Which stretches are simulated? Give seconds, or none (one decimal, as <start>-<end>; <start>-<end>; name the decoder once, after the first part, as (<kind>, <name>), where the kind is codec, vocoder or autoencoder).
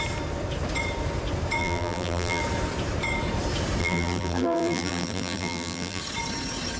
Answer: 1.6-2.4 (vocoder, BigVGAN v2); 3.8-6.0